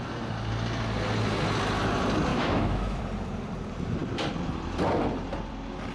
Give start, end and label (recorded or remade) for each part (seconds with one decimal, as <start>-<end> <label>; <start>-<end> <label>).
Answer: 0.0-2.3 recorded; 2.3-3.0 remade; 3.0-5.9 recorded